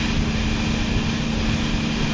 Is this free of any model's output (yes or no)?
yes